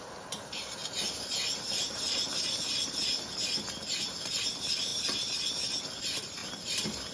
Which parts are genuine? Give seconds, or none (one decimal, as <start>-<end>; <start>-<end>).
0.8-1.8; 2.8-4.0; 4.9-6.0